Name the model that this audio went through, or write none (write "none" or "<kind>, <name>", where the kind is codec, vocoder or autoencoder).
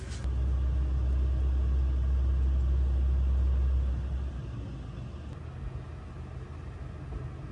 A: none